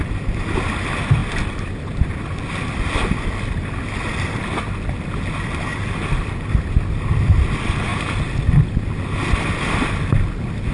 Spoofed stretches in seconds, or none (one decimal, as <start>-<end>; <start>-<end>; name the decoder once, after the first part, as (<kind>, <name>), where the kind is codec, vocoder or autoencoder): none

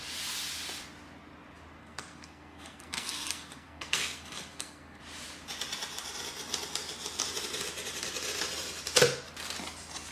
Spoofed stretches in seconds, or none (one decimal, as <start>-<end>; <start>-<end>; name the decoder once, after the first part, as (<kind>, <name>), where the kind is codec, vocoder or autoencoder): 1.8-5.0 (codec, SNAC)

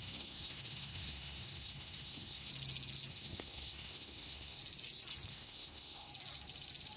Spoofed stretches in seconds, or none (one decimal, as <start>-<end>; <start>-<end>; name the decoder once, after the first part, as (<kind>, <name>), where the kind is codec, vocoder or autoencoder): 0.0-2.5 (codec, SNAC); 3.1-4.6; 5.3-6.1

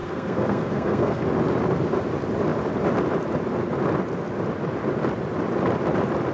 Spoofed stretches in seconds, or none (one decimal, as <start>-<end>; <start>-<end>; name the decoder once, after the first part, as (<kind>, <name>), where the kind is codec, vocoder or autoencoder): 0.0-1.2 (codec, SNAC)

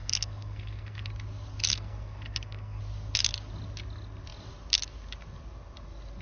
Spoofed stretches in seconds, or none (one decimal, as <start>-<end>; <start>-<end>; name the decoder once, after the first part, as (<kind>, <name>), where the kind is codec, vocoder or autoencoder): 0.0-1.1 (codec, SNAC); 1.7-2.8

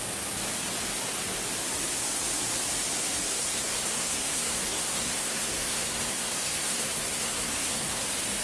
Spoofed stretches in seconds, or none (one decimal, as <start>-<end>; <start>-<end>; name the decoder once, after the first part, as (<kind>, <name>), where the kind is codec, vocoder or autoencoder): 3.3-8.0 (codec, SNAC)

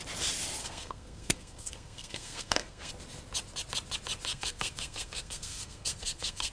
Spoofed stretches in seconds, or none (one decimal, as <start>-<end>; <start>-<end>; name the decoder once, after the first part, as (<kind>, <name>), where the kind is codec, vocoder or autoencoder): 0.6-2.9 (codec, SNAC); 4.3-6.5